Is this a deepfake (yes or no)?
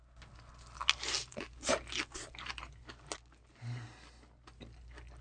no